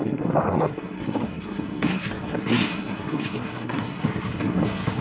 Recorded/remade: remade